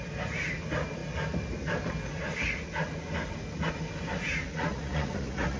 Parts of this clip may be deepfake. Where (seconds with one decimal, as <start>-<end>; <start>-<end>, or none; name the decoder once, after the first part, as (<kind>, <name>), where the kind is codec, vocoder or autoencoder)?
4.5-5.6 (vocoder, Vocos)

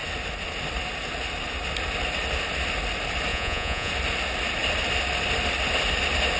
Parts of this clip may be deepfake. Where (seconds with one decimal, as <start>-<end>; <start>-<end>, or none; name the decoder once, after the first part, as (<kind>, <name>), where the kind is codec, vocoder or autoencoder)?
3.3-3.9 (vocoder, Vocos)